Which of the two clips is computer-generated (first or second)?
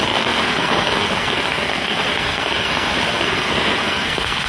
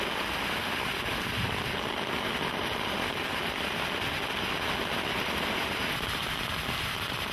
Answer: first